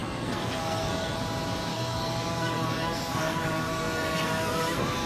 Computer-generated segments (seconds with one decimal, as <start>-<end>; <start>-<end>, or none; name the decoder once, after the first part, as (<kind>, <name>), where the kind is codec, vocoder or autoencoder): 0.0-1.2 (codec, SNAC); 1.7-5.1